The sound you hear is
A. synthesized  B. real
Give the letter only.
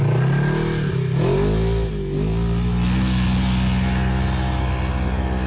B